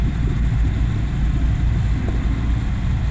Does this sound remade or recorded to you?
recorded